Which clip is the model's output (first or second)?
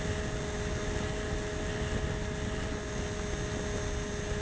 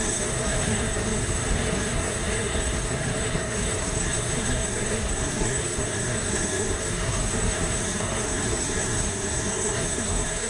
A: second